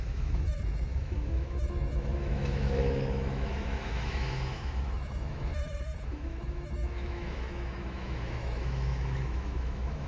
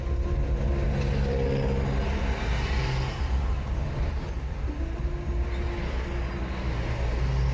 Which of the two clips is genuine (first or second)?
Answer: second